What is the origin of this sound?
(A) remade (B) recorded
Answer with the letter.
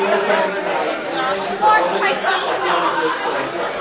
B